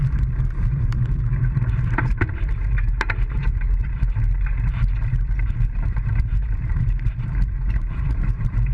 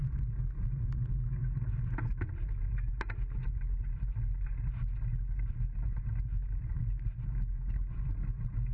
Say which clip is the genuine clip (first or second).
second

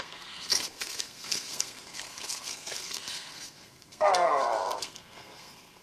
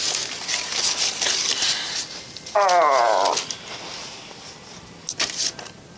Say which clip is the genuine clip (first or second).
second